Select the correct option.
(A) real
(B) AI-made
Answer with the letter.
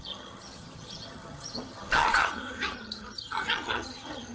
B